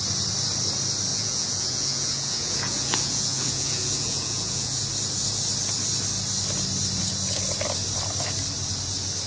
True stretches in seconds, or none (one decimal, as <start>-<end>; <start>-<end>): 0.0-1.1; 4.8-9.3